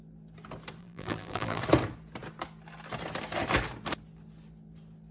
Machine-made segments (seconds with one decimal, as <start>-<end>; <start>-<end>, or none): 0.8-1.6